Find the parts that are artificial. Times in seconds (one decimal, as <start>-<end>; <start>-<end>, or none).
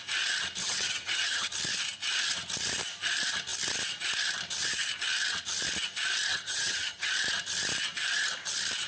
0.6-1.5; 6.3-7.1